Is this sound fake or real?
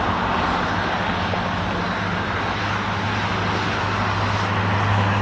real